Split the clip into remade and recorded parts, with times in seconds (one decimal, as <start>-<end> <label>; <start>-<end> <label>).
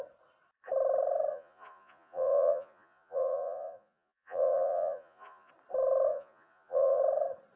0.0-1.3 recorded; 1.3-5.5 remade; 5.5-6.1 recorded; 6.1-7.0 remade; 7.0-7.6 recorded